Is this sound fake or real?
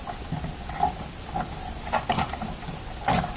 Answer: real